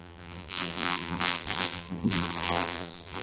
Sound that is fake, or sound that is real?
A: fake